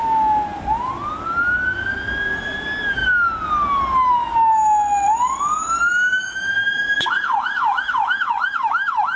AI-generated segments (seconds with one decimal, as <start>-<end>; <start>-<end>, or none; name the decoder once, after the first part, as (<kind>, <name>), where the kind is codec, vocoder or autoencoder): 5.9-9.2 (autoencoder, DAC-VAE)

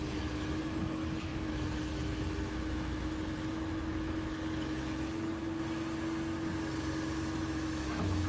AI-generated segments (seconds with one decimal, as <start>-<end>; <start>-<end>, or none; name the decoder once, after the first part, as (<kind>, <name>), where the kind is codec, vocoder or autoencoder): 0.0-5.3 (autoencoder, DAC-VAE); 7.4-8.3

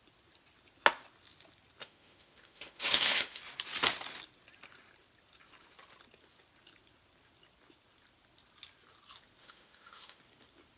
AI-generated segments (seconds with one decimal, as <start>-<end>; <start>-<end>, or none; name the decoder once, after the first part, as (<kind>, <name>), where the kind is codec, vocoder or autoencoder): 1.8-3.4 (autoencoder, DAC-VAE); 9.4-10.2

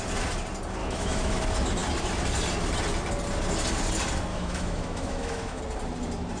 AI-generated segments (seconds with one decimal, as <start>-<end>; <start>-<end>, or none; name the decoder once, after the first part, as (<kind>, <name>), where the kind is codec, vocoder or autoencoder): 0.8-1.4 (autoencoder, DAC-VAE); 4.3-5.6

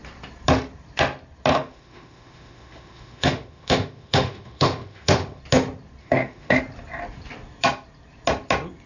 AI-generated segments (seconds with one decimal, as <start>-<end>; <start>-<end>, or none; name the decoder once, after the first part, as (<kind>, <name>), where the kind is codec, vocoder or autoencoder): 1.5-5.4 (autoencoder, DAC-VAE); 6.0-6.6

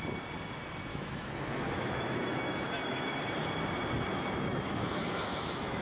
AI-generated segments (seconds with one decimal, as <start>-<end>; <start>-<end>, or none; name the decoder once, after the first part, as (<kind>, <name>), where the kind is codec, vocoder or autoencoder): 0.9-3.2 (autoencoder, DAC-VAE); 4.1-5.8

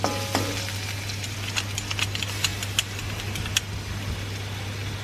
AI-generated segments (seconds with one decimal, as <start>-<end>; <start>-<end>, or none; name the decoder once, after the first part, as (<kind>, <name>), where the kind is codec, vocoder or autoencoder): none